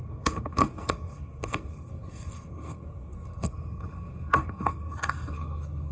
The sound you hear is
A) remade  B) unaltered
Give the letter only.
A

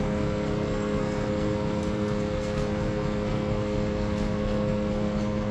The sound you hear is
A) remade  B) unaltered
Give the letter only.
A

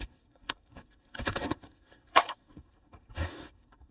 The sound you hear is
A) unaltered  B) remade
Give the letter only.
B